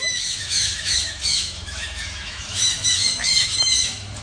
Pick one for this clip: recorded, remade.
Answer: remade